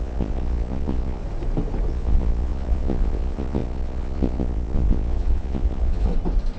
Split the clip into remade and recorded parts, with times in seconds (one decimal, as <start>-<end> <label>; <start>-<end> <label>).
0.0-1.2 remade; 1.2-1.9 recorded; 1.9-6.1 remade; 6.1-6.6 recorded